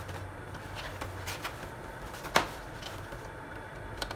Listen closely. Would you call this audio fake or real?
real